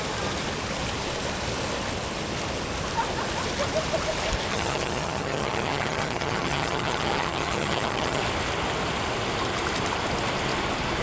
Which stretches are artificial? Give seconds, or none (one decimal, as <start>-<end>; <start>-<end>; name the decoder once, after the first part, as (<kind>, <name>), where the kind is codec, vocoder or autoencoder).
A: 4.5-8.2 (vocoder, HiFi-GAN)

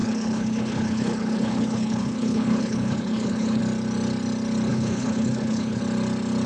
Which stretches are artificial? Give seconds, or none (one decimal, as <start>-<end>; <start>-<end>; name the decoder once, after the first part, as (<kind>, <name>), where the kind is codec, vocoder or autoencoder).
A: 0.0-3.6 (codec, HILCodec); 4.7-5.8

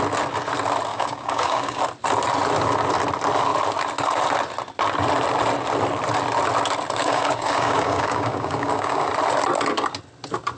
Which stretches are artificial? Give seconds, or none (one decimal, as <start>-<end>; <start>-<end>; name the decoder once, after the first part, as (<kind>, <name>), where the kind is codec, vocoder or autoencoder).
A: 0.9-1.8 (codec, DAC); 7.0-9.1

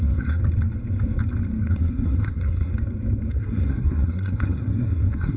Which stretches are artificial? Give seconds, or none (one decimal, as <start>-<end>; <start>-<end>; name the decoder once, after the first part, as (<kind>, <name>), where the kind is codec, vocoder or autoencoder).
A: 0.0-0.4 (codec, SNAC); 1.6-2.7; 3.3-5.4

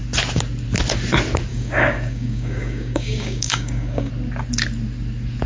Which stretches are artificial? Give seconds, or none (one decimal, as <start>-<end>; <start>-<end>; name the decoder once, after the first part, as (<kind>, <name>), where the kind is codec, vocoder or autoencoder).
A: 1.5-4.1 (codec, DAC)

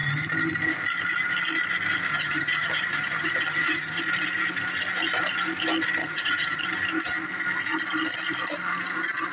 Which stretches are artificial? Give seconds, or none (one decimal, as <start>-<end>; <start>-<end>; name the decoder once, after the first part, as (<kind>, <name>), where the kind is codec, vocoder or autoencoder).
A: 2.1-4.0 (vocoder, HiFi-GAN); 6.0-6.6

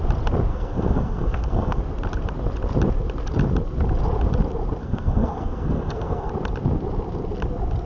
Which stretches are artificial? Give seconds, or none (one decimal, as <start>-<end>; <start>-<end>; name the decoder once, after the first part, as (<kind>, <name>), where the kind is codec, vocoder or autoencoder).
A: 0.5-1.8 (codec, SNAC); 4.8-6.3

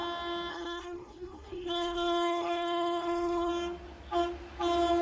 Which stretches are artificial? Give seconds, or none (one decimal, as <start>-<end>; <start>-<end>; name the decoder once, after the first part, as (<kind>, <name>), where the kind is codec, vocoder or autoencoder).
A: 0.5-3.5 (codec, SNAC)